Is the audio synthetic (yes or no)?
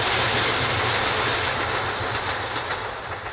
no